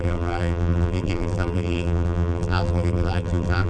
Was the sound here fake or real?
fake